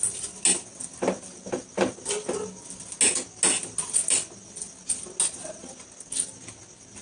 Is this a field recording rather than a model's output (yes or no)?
yes